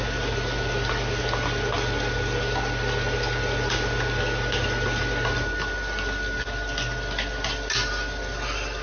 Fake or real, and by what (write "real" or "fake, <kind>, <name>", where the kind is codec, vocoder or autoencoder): real